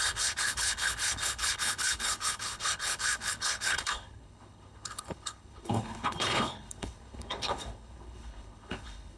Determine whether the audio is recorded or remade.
remade